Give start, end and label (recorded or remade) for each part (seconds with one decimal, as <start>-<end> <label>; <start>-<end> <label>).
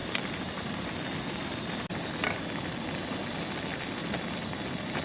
0.0-5.0 recorded